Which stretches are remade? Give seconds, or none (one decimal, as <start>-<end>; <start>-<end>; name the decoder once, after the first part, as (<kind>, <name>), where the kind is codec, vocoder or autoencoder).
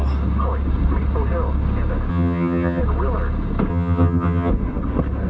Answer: 2.1-2.8 (vocoder, HiFi-GAN); 3.7-4.5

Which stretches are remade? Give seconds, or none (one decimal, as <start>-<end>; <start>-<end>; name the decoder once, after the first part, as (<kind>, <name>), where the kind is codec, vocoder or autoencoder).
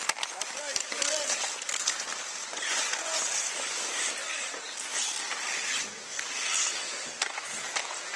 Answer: 2.4-3.2 (vocoder, Vocos)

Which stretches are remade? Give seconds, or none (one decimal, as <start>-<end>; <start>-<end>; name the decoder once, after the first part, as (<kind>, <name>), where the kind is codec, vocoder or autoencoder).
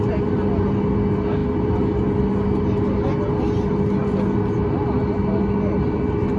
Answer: none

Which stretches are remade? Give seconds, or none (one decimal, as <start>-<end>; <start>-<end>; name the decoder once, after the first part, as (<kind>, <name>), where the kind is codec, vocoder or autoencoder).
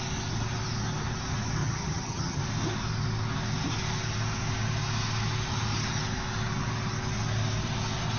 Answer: 1.6-2.4 (vocoder, HiFi-GAN)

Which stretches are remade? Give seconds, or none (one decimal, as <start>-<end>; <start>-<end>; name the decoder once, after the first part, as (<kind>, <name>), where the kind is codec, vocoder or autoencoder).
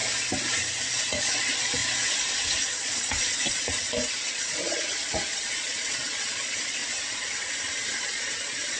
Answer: 1.0-1.8 (vocoder, Vocos); 2.8-6.8; 8.0-8.8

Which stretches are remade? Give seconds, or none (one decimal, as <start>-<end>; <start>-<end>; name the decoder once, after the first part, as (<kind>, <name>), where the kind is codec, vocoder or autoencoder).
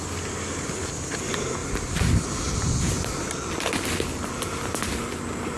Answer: 1.6-3.3 (vocoder, BigVGAN v2)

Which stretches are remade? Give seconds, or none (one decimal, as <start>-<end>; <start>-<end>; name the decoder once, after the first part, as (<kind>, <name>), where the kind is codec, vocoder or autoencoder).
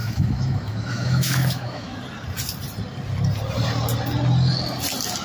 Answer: 0.0-1.9 (autoencoder, DAC-VAE)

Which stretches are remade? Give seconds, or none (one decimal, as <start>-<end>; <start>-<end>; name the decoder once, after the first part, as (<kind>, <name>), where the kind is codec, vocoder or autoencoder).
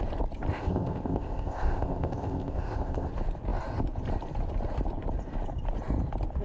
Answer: 0.5-3.1 (codec, ZipCodec)